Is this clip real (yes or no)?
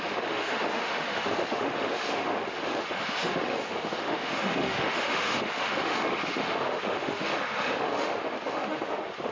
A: no